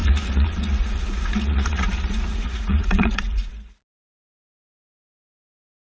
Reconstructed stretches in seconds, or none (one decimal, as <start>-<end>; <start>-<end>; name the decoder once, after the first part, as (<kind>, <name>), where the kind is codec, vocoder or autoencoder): 0.0-3.5 (vocoder, Vocos)